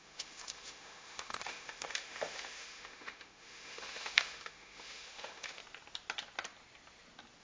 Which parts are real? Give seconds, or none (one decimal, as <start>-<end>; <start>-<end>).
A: 5.6-7.4